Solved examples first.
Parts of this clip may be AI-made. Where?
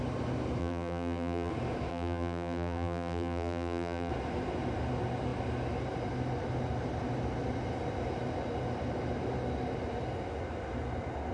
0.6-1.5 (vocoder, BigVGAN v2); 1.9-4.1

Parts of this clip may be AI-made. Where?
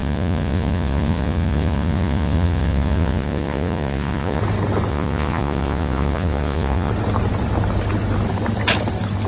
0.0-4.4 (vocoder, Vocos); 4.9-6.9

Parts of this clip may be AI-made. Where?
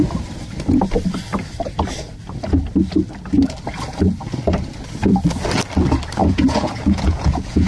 6.2-7.7 (vocoder, Vocos)